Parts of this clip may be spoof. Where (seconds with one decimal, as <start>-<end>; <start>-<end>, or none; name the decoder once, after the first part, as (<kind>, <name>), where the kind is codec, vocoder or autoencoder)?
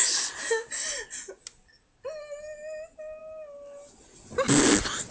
none